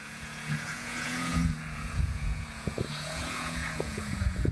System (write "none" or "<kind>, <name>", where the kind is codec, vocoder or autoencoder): vocoder, Vocos